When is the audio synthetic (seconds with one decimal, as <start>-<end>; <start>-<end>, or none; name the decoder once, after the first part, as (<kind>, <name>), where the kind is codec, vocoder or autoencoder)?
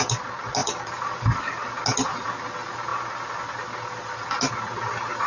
0.6-1.4 (vocoder, BigVGAN v2)